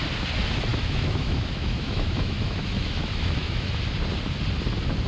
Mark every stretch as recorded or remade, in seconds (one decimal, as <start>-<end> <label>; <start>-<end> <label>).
0.0-0.7 recorded; 0.7-3.7 remade; 3.7-5.1 recorded